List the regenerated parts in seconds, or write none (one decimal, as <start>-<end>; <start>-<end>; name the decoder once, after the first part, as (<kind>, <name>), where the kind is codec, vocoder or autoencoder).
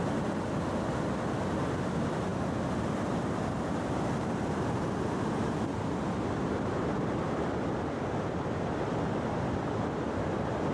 none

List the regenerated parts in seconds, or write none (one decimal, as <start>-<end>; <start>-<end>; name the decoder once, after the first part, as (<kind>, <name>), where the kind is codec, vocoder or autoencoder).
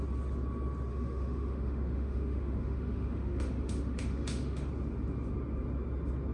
0.9-4.7 (autoencoder, DAC-VAE)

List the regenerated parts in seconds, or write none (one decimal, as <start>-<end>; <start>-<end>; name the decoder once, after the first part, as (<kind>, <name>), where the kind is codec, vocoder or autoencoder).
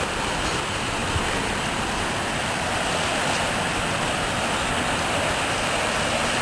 1.0-2.1 (vocoder, BigVGAN v2)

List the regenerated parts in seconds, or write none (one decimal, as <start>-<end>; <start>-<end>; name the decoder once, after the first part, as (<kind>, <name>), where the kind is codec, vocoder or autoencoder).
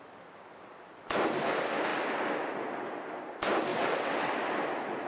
3.7-4.3 (vocoder, WaveNeXt)